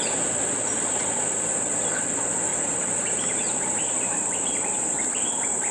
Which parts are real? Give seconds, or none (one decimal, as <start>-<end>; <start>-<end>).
0.0-2.5; 4.9-5.7